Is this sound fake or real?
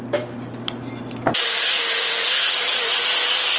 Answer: real